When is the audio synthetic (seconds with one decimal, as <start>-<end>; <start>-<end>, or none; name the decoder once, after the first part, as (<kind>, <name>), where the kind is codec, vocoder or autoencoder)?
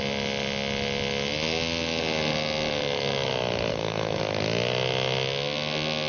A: 3.7-4.2 (codec, SNAC)